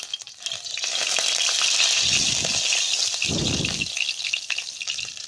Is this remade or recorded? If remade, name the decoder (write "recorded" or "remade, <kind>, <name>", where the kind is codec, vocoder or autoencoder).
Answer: recorded